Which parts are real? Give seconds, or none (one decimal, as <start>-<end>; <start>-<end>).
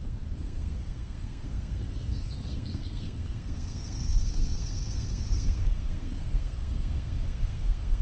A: none